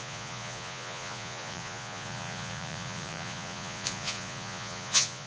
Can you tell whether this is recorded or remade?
remade